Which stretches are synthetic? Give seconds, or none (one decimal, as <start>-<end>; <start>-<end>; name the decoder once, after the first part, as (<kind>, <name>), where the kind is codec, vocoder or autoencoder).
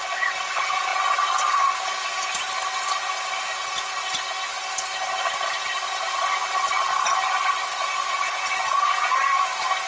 none